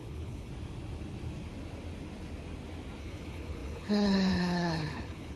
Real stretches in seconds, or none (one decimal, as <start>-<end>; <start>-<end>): 0.5-3.0